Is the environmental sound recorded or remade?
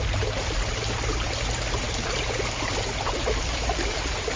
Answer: recorded